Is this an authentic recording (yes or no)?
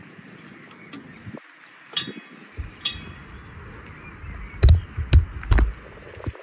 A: yes